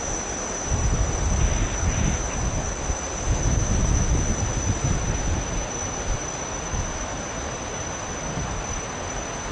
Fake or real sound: real